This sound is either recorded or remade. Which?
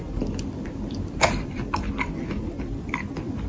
remade